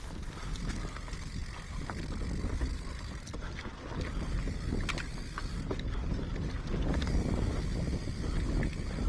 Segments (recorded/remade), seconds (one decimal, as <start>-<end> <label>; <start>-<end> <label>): 0.0-9.1 recorded